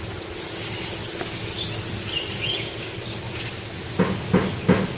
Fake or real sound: real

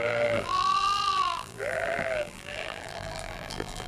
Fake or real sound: fake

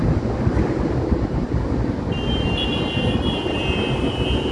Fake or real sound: real